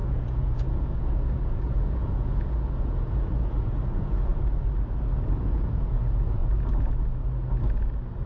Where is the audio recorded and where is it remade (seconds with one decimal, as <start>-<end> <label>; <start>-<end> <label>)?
0.0-4.3 remade; 4.3-5.4 recorded; 5.4-6.4 remade; 6.4-8.3 recorded